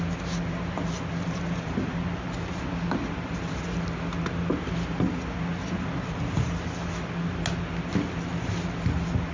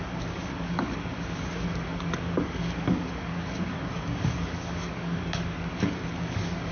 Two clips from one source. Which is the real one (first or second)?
first